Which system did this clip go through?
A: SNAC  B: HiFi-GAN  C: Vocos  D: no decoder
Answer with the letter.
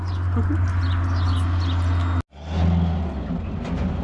D